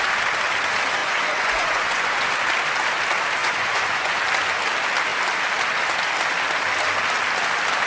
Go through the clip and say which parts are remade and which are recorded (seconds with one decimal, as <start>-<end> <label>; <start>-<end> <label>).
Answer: 0.0-1.0 recorded; 1.0-2.3 remade; 2.3-3.4 recorded; 3.4-4.2 remade; 4.2-7.9 recorded